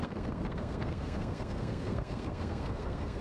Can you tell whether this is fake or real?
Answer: fake